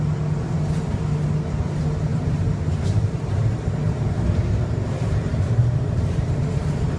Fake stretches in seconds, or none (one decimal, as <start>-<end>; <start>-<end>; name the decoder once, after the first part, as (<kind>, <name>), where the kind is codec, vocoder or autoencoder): 2.1-6.3 (vocoder, BigVGAN v2)